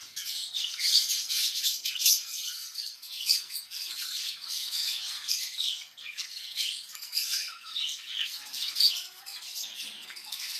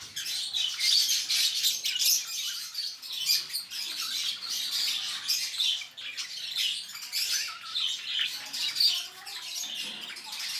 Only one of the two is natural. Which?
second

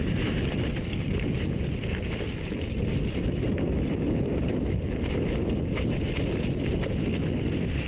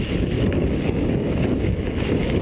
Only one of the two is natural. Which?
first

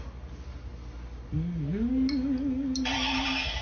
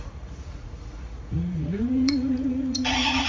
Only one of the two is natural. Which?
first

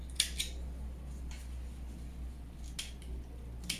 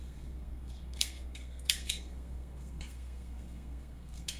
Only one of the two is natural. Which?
first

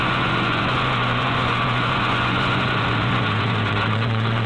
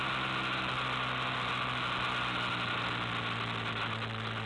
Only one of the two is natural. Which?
second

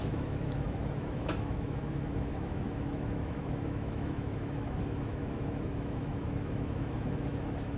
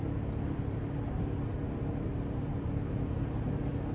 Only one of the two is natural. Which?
second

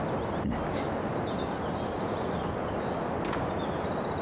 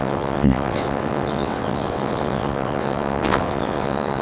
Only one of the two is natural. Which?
first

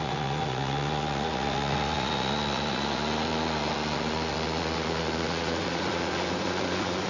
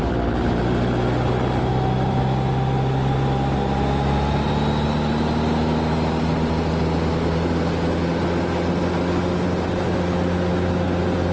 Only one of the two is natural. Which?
second